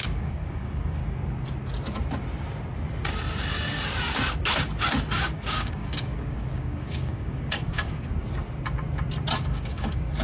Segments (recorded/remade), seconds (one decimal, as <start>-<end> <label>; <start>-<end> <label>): 0.0-1.0 remade; 1.0-5.1 recorded; 5.1-8.1 remade; 8.1-9.4 recorded; 9.4-10.2 remade